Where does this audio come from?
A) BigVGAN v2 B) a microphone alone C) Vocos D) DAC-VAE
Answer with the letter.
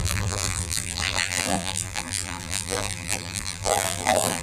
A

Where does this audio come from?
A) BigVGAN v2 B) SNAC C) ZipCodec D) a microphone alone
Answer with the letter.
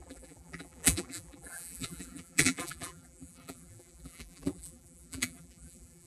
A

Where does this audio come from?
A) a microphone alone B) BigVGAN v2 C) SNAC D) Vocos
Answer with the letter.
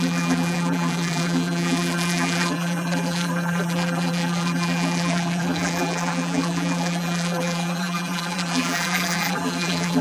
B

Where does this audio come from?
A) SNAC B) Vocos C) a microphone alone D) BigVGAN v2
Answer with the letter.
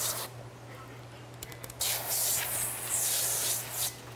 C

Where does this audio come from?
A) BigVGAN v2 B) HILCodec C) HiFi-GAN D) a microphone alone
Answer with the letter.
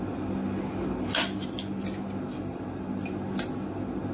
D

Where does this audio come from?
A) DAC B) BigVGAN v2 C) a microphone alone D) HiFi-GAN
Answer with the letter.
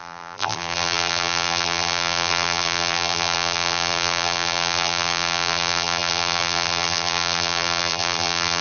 B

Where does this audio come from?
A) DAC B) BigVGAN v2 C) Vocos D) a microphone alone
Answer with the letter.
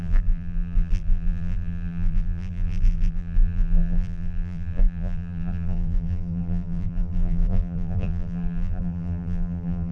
B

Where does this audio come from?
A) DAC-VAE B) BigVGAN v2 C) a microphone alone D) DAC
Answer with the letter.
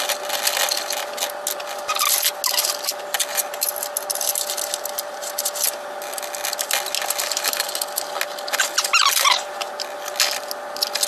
C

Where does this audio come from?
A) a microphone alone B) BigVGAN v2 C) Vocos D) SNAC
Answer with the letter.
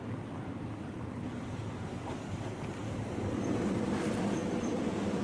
B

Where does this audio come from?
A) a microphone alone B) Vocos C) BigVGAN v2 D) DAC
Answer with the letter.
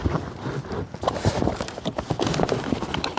A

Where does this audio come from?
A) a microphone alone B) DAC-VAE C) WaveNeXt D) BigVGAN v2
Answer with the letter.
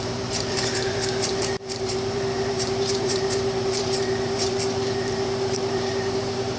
D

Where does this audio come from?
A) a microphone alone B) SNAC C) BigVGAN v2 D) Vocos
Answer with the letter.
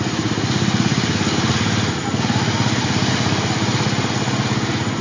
A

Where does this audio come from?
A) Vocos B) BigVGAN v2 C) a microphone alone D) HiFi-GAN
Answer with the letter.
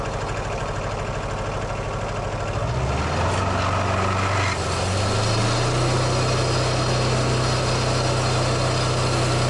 C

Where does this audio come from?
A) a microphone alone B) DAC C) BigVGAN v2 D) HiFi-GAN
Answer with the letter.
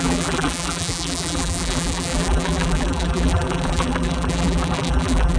C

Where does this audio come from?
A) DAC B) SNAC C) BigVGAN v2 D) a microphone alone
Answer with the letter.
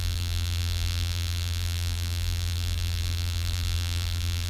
C